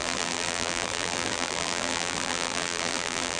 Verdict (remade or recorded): remade